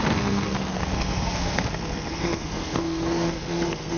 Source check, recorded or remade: remade